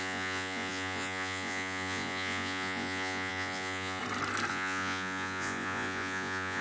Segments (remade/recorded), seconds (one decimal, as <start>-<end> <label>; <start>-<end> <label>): 0.0-4.0 remade; 4.0-4.5 recorded; 4.5-6.6 remade

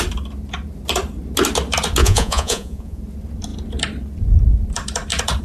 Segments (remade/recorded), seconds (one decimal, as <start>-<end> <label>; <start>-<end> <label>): 0.0-2.0 recorded; 2.0-3.0 remade; 3.0-5.4 recorded

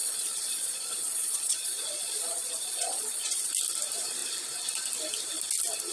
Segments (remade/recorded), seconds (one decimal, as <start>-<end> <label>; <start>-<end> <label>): 0.0-3.5 remade; 3.5-5.9 recorded

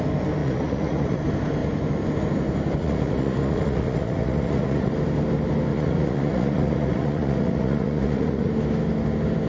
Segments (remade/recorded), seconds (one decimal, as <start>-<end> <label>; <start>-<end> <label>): 0.0-0.4 recorded; 0.4-1.2 remade; 1.2-2.8 recorded; 2.8-4.9 remade; 4.9-5.7 recorded; 5.7-8.5 remade; 8.5-9.5 recorded

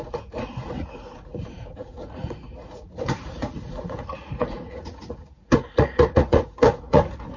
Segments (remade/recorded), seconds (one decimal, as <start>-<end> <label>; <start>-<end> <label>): 0.0-7.4 remade

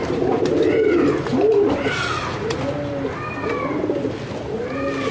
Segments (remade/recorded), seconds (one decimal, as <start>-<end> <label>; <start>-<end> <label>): 0.0-5.1 recorded